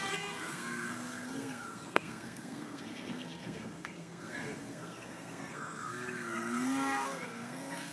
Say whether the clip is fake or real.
fake